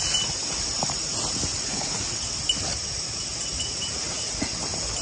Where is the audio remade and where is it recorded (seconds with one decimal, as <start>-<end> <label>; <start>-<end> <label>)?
0.0-1.5 recorded; 1.5-2.1 remade; 2.1-3.5 recorded; 3.5-4.4 remade; 4.4-5.0 recorded